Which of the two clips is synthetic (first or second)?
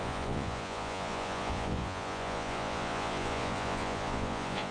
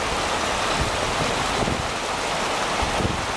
first